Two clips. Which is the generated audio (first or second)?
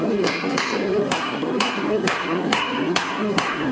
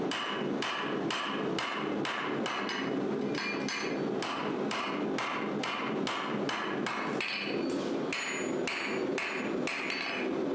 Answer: first